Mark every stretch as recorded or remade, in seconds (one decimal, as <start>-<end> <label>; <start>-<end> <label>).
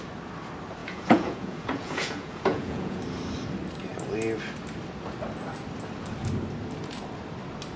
0.0-0.8 recorded; 0.8-3.0 remade; 3.0-7.8 recorded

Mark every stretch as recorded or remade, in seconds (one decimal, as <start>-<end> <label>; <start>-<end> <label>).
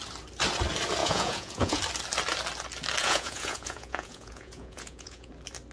0.0-1.0 recorded; 1.0-1.8 remade; 1.8-3.0 recorded; 3.0-5.3 remade; 5.3-5.7 recorded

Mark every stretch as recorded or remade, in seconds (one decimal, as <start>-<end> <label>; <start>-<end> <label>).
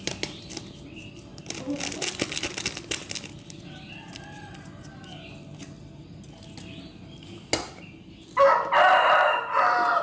0.0-10.0 recorded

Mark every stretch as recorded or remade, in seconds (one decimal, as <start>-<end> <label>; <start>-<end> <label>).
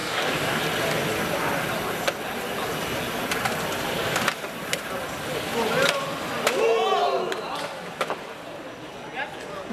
0.0-0.6 remade; 0.6-9.7 recorded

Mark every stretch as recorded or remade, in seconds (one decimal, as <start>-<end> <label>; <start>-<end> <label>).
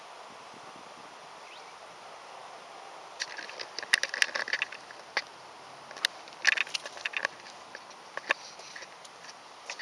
0.0-9.8 recorded